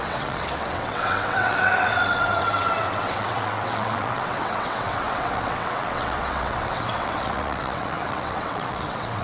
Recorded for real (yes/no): no